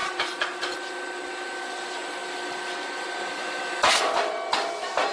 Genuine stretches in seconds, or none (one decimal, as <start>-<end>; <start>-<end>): 0.0-5.1